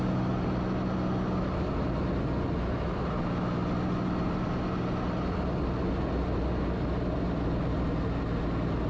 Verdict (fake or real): real